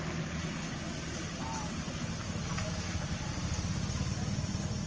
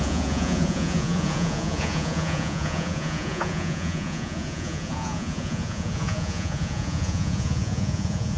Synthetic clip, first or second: second